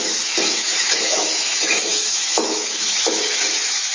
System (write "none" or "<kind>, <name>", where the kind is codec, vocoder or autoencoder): autoencoder, DAC-VAE